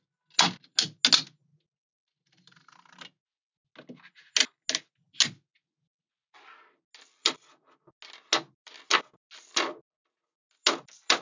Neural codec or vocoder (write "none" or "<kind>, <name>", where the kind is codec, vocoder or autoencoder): none